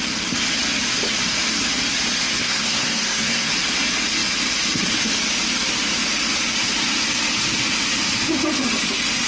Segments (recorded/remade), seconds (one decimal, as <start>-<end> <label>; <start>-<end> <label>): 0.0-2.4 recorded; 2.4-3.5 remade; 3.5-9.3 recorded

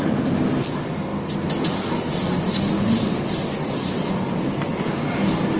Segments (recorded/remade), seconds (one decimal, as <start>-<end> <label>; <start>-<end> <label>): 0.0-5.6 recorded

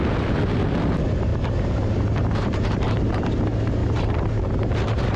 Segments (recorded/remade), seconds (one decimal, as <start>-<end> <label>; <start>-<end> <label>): 0.0-1.3 recorded; 1.3-2.0 remade; 2.0-2.4 recorded; 2.4-3.4 remade; 3.4-3.8 recorded; 3.8-4.5 remade; 4.5-5.2 recorded

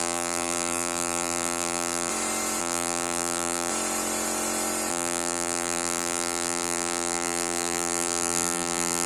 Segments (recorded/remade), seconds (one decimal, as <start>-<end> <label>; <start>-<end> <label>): 0.0-2.1 remade; 2.1-2.6 recorded; 2.6-3.7 remade; 3.7-4.9 recorded; 4.9-9.1 remade

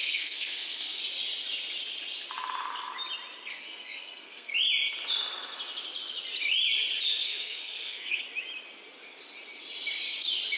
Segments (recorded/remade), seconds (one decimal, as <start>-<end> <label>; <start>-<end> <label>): 0.0-1.0 remade; 1.0-3.5 recorded; 3.5-4.5 remade; 4.5-7.2 recorded; 7.2-8.2 remade; 8.2-10.6 recorded

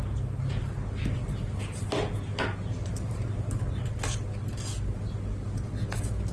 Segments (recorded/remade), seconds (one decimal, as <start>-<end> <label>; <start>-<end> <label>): 0.0-2.8 recorded; 2.8-3.5 remade; 3.5-6.3 recorded

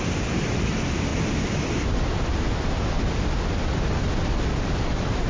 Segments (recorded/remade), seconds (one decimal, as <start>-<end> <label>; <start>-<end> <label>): 0.0-1.1 remade; 1.1-4.3 recorded; 4.3-5.3 remade